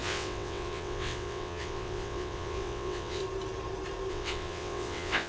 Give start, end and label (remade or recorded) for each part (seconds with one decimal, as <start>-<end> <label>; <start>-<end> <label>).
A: 0.0-3.2 remade; 3.2-4.1 recorded; 4.1-5.3 remade